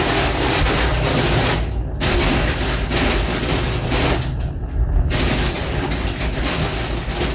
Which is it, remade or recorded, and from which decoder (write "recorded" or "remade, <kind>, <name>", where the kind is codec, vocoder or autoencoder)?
recorded